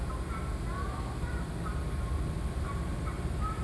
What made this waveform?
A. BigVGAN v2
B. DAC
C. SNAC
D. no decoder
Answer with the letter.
D